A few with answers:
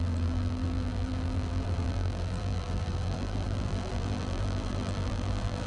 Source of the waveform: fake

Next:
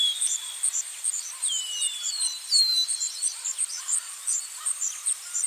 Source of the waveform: fake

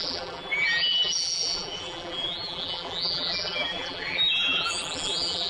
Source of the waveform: fake